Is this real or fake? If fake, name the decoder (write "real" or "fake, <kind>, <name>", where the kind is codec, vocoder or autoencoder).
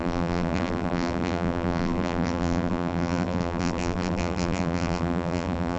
fake, vocoder, BigVGAN v2